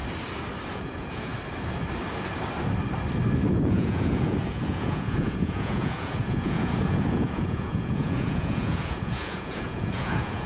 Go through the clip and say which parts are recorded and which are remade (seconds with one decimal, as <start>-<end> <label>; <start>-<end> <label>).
0.0-0.7 recorded; 0.7-1.3 remade; 1.3-3.5 recorded; 3.5-10.5 remade

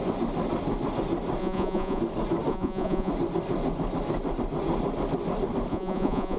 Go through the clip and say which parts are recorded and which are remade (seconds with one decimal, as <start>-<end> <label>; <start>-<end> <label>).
0.0-1.4 recorded; 1.4-2.0 remade; 2.0-2.5 recorded; 2.5-3.1 remade; 3.1-5.7 recorded; 5.7-6.4 remade

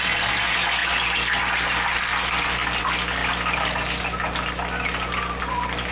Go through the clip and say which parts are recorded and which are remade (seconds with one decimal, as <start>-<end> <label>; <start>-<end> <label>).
0.0-5.9 recorded

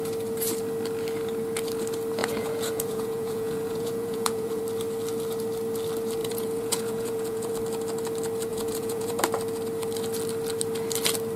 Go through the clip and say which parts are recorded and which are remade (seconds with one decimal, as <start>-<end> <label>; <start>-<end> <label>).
0.0-2.2 recorded; 2.2-4.6 remade; 4.6-6.2 recorded; 6.2-7.5 remade; 7.5-8.5 recorded; 8.5-9.2 remade; 9.2-11.4 recorded

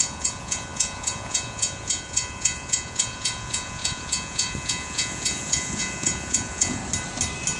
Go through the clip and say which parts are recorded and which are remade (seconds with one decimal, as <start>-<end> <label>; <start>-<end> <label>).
0.0-6.8 remade; 6.8-7.6 recorded

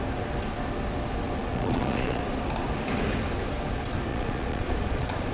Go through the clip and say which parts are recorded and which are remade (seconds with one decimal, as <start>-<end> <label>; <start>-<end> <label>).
0.0-1.4 recorded; 1.4-2.2 remade; 2.2-4.1 recorded; 4.1-5.3 remade

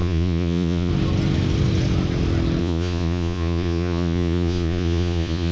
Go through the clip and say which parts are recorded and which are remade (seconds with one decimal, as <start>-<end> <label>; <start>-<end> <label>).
0.0-0.9 remade; 0.9-2.6 recorded; 2.6-5.5 remade